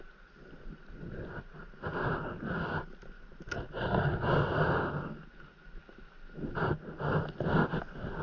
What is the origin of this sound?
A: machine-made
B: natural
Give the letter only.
B